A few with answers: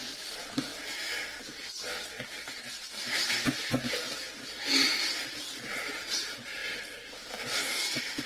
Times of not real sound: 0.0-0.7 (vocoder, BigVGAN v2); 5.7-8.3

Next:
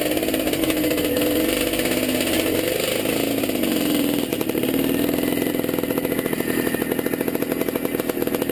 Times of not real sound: none

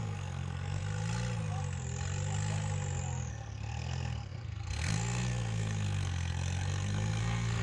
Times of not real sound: 0.0-0.8 (codec, SNAC); 3.3-7.6

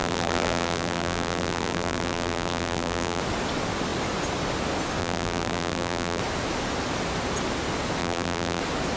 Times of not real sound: 0.0-3.2 (vocoder, BigVGAN v2); 5.0-6.2; 8.0-8.6

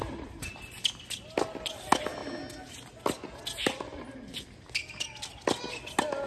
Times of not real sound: none

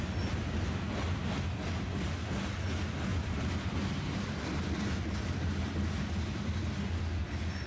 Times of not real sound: 3.1-5.8 (vocoder, BigVGAN v2)

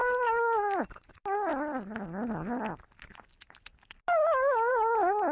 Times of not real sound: none

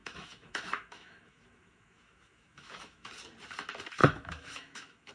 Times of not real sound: 0.0-3.1 (autoencoder, DAC-VAE); 4.0-5.1